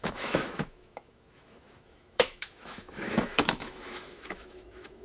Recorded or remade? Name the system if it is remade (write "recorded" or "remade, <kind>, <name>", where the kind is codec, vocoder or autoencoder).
remade, autoencoder, DAC-VAE